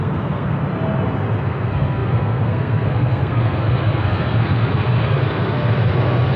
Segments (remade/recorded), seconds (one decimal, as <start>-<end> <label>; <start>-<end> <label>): 0.0-0.6 remade; 0.6-1.4 recorded; 1.4-6.4 remade